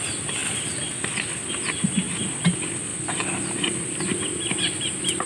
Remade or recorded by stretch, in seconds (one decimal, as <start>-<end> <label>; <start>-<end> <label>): 0.0-5.3 recorded